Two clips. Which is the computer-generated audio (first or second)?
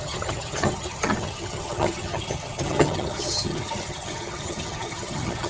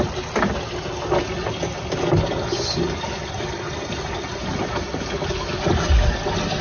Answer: first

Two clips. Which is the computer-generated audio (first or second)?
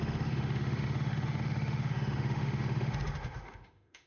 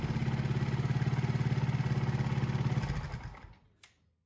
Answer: first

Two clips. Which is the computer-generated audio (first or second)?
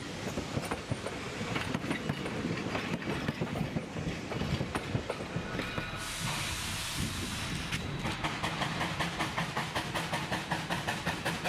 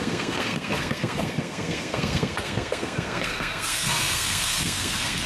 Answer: second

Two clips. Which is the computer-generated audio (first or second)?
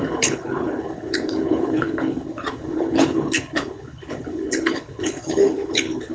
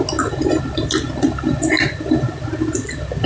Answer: first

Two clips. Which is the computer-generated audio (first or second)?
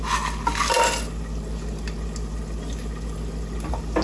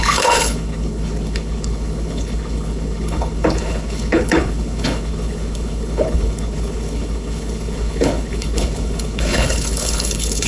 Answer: second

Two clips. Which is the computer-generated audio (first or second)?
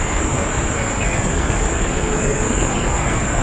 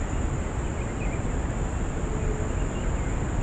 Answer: first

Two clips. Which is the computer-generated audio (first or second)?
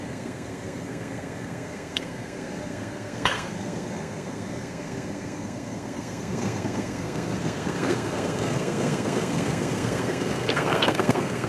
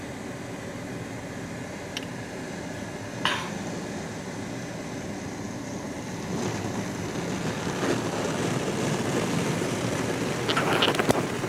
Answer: first